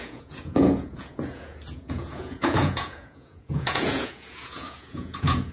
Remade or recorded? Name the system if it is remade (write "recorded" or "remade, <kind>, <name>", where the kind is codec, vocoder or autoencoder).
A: remade, vocoder, Vocos